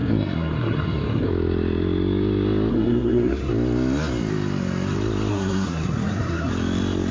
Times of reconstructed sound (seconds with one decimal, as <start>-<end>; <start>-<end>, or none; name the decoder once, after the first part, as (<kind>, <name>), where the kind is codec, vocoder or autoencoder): 0.0-1.3 (codec, SNAC); 2.7-3.5; 5.3-6.5